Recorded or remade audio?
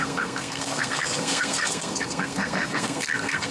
remade